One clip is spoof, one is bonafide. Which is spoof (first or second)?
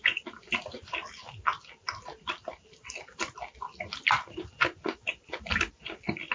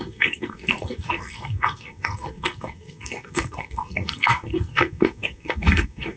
second